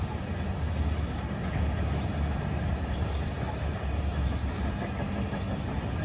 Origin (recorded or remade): recorded